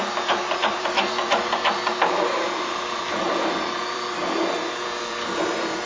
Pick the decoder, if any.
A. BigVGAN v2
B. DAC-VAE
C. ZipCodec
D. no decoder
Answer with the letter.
A